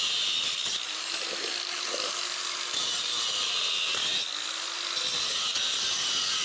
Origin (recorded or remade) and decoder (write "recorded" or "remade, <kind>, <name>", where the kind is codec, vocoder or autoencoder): recorded